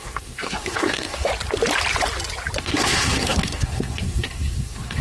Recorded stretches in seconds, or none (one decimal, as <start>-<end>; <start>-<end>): 1.3-2.6